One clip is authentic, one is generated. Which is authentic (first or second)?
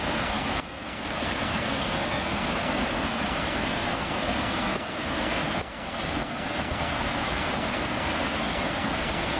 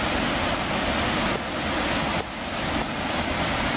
second